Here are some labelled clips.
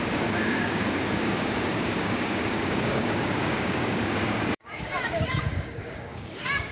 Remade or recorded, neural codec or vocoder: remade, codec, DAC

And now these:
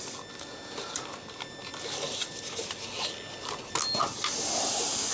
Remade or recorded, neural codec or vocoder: recorded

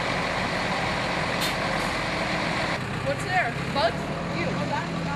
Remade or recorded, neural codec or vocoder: recorded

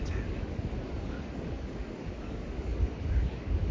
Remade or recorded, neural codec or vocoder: remade, codec, DAC